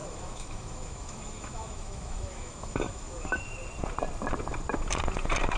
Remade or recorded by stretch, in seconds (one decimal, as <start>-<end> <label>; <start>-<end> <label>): 0.0-3.4 remade; 3.4-5.6 recorded